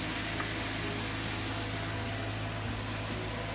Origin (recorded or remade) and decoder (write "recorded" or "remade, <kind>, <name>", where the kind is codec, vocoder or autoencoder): recorded